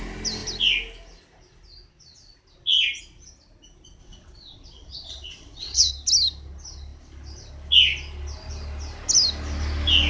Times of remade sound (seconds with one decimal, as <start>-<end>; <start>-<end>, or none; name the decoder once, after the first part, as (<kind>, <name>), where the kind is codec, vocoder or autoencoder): 4.0-5.9 (vocoder, WaveNeXt)